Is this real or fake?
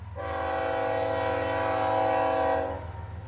real